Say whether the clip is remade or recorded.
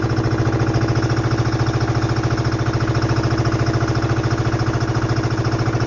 recorded